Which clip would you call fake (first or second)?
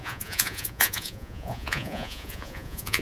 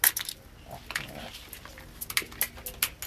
first